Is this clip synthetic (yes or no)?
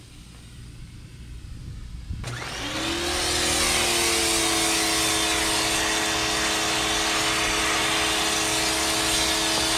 no